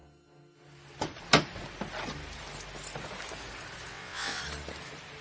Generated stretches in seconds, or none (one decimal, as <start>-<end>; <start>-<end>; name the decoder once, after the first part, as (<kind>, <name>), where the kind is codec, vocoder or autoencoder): 3.9-4.4 (vocoder, WaveNeXt)